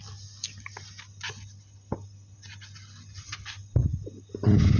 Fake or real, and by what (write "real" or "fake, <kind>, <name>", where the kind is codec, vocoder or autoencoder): fake, vocoder, BigVGAN v2